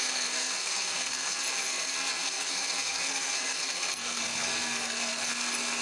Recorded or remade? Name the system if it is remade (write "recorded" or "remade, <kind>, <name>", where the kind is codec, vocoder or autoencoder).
remade, codec, SNAC